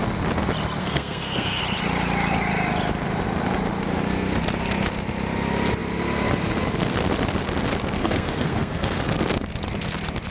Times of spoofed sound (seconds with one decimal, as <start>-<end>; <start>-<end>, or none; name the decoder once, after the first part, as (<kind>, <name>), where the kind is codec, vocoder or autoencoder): 0.8-1.6 (codec, SNAC); 8.0-9.1